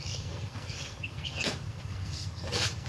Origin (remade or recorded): remade